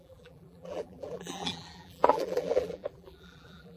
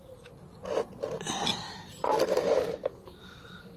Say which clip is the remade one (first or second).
first